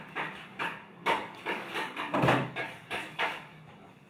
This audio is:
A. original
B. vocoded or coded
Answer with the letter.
B